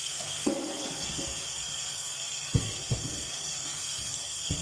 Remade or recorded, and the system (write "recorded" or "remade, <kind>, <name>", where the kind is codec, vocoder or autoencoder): remade, codec, SNAC